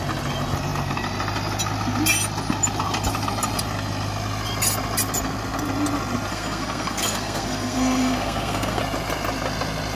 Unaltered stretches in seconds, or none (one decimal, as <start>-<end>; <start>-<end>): 0.0-6.3; 8.8-9.9